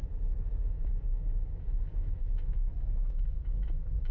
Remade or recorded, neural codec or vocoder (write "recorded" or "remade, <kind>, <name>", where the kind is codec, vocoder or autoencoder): remade, autoencoder, DAC-VAE